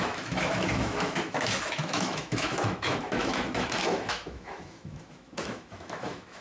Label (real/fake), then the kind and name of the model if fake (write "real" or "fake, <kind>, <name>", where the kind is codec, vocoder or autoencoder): fake, autoencoder, DAC-VAE